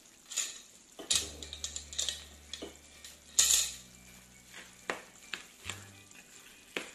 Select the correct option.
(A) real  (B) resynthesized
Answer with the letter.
A